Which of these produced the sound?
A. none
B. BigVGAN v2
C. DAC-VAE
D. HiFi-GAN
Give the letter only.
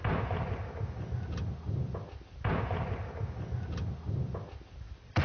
A